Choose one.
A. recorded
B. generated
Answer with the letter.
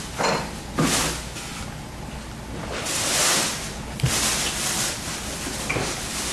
A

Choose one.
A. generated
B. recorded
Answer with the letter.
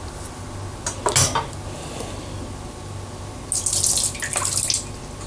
B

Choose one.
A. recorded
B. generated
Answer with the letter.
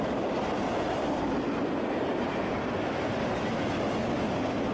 A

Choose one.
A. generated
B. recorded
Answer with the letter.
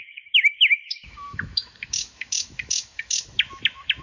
A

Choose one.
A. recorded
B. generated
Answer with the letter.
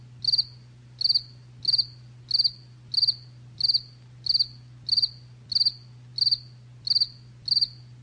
A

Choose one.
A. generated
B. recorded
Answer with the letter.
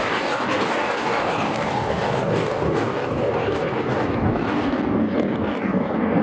A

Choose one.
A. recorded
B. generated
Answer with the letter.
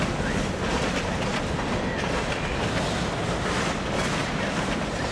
A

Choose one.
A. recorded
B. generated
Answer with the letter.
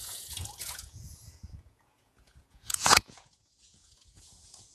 B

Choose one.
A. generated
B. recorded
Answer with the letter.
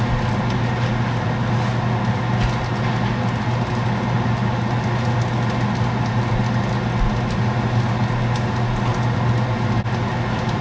B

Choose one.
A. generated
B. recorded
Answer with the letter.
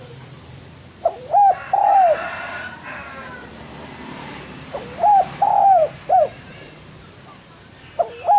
A